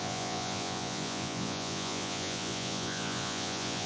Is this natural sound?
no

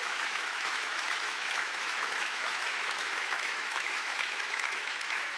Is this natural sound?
no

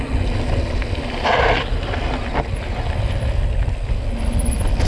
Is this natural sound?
yes